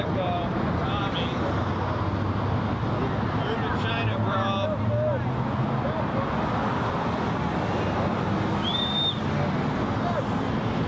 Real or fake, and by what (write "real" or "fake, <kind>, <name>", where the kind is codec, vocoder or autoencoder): real